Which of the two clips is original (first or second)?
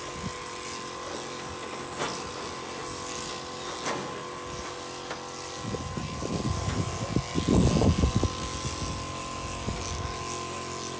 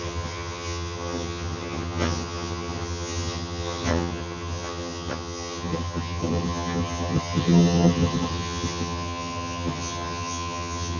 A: first